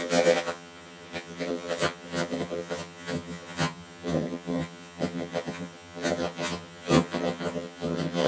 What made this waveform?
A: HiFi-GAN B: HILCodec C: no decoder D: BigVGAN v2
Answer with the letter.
A